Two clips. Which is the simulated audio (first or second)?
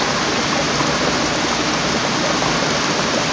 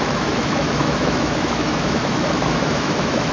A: second